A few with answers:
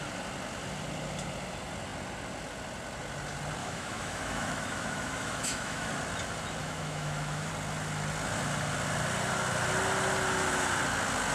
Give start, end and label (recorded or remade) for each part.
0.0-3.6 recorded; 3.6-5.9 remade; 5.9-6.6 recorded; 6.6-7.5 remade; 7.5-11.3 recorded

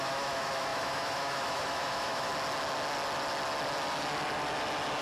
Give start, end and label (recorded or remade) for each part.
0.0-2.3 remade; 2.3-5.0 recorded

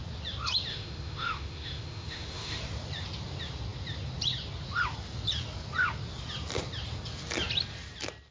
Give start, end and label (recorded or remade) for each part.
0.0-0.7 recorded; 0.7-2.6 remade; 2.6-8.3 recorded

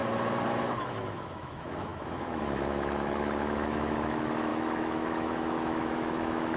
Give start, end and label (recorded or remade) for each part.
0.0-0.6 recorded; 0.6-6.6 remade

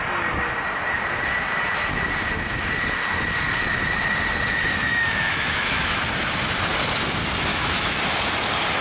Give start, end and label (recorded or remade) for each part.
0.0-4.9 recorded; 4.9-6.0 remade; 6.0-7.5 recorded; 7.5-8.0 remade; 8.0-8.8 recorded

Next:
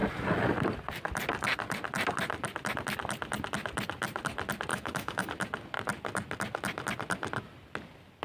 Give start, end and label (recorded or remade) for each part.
0.0-4.7 recorded; 4.7-5.3 remade; 5.3-8.2 recorded